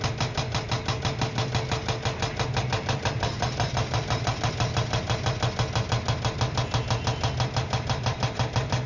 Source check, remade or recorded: recorded